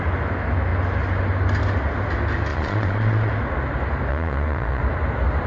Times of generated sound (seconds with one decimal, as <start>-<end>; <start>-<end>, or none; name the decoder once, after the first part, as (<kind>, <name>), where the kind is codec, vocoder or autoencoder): 2.5-3.3 (vocoder, Vocos); 4.1-4.8

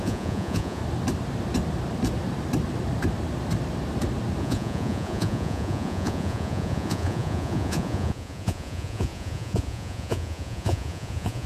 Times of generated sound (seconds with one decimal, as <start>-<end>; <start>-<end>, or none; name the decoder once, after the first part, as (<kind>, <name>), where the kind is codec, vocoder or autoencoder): 0.0-0.8 (vocoder, Vocos); 4.4-11.5

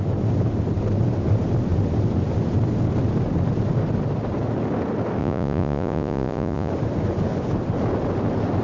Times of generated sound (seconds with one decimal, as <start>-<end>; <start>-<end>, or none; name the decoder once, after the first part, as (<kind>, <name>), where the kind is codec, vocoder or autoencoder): 5.2-6.7 (vocoder, Vocos)

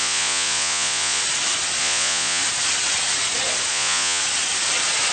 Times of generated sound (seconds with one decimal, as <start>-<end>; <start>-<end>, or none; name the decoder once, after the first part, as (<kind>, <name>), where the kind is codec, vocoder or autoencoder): 0.0-1.2 (vocoder, Vocos); 1.8-2.4; 3.7-4.2

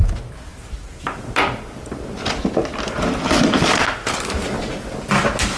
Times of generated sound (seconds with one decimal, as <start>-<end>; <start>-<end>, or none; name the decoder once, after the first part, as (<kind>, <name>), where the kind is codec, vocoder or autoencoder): none

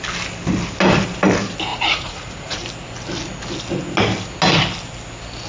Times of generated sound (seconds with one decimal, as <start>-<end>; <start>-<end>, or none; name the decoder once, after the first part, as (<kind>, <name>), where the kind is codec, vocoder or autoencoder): 1.7-2.6 (vocoder, Vocos)